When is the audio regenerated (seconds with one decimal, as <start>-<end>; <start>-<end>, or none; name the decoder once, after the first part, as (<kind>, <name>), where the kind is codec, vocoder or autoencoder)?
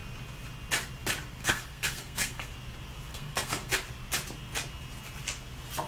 1.4-2.5 (codec, SNAC); 3.1-3.7